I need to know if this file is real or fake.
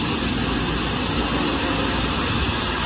real